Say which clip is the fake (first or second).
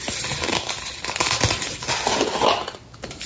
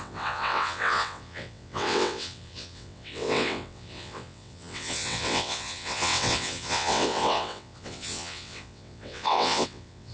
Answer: second